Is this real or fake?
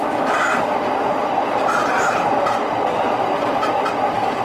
real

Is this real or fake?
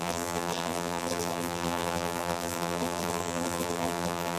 fake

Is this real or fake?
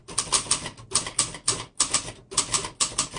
real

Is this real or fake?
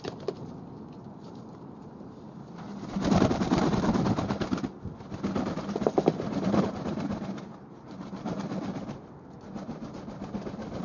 real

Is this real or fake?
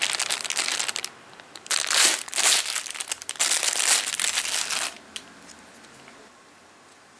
real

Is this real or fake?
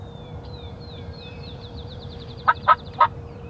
fake